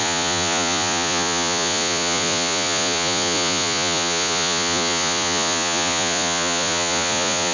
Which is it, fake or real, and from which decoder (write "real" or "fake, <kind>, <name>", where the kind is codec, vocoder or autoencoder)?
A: fake, vocoder, Vocos